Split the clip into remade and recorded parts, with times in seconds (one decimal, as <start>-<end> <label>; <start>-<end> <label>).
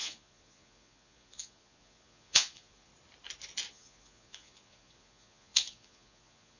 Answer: 0.0-2.9 remade; 2.9-3.7 recorded; 3.7-6.6 remade